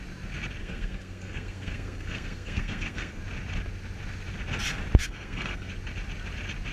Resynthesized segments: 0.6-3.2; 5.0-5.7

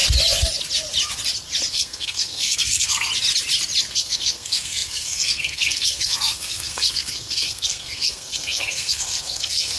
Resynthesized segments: 1.7-3.1; 3.9-9.8

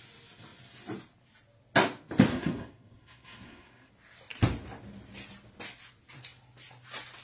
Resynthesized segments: 2.3-3.9